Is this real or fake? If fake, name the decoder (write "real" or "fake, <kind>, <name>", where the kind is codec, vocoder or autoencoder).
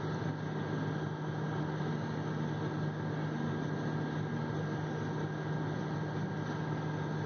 real